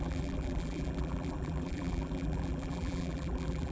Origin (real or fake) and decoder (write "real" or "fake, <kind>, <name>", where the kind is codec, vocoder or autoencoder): fake, vocoder, BigVGAN v2